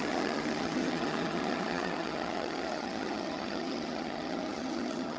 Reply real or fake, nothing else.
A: fake